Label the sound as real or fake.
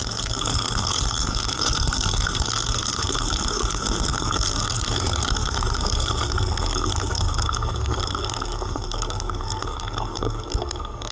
fake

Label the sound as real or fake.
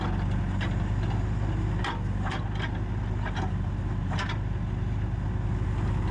real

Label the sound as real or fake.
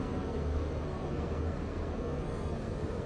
fake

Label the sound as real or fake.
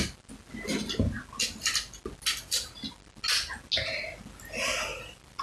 real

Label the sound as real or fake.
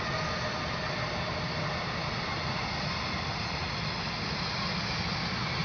real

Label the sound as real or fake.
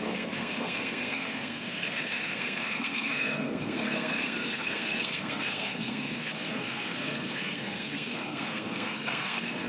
fake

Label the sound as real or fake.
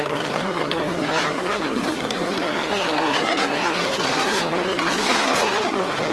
fake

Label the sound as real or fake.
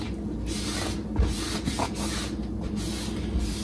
real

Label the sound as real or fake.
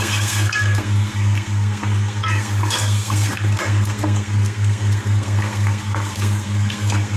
fake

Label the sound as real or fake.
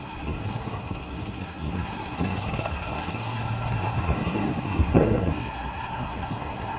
fake